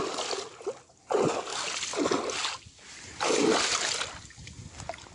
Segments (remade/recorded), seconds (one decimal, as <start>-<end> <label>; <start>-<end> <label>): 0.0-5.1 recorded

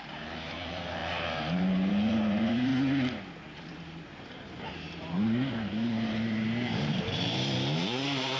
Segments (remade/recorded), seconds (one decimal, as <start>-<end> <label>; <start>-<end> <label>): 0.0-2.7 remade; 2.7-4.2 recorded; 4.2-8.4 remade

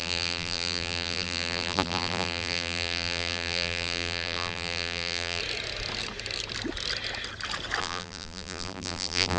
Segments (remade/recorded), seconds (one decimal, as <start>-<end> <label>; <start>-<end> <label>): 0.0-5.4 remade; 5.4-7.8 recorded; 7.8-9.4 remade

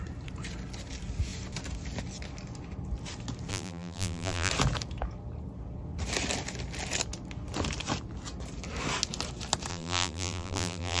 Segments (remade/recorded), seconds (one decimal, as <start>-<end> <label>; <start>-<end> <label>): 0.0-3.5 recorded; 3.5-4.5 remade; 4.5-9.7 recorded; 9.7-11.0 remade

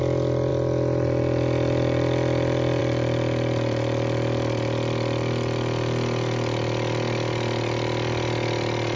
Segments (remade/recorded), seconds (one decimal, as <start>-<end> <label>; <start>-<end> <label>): 0.0-9.0 recorded

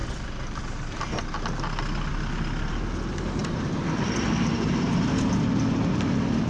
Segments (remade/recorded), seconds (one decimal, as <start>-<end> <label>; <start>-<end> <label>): 0.0-2.1 recorded; 2.1-2.7 remade; 2.7-3.4 recorded; 3.4-4.9 remade; 4.9-6.5 recorded